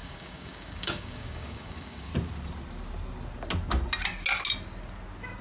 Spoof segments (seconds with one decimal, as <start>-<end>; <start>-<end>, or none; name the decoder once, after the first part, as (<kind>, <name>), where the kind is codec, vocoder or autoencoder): 0.0-2.1 (codec, DAC)